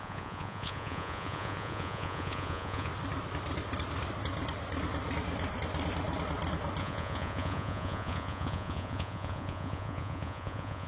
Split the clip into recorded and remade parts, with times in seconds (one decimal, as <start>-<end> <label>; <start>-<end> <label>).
0.0-2.9 remade; 2.9-6.8 recorded; 6.8-10.9 remade

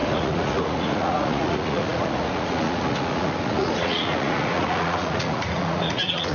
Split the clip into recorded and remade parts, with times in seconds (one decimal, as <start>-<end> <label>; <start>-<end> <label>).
0.0-6.3 remade

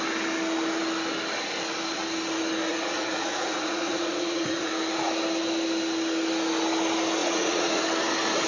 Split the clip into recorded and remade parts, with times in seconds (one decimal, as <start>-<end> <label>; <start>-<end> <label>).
0.0-2.7 recorded; 2.7-4.7 remade; 4.7-7.2 recorded; 7.2-7.8 remade; 7.8-8.5 recorded

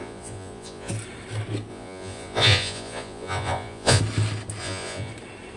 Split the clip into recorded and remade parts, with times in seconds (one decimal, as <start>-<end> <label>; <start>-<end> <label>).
0.0-0.9 remade; 0.9-1.7 recorded; 1.7-4.0 remade; 4.0-4.6 recorded; 4.6-5.1 remade; 5.1-5.6 recorded

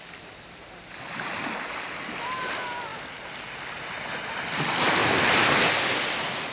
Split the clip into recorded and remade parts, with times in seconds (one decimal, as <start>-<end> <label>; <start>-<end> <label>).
0.0-6.5 recorded